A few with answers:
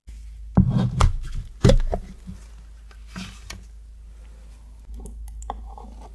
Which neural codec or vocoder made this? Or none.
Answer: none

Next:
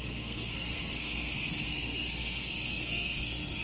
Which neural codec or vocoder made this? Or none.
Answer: codec, SNAC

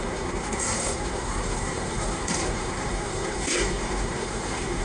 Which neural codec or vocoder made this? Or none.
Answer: codec, SNAC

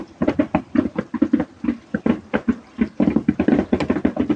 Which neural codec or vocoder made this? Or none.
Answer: none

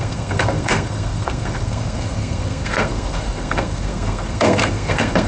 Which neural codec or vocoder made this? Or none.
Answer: codec, SNAC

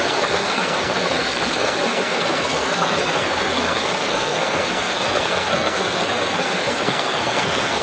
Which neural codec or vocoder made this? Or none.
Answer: codec, SNAC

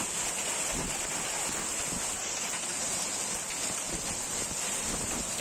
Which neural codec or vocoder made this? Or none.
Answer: none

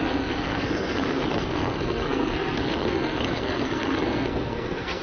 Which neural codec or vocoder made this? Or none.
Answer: codec, SNAC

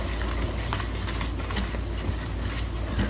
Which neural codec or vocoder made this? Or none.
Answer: none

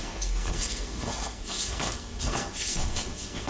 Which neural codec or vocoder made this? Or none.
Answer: codec, SNAC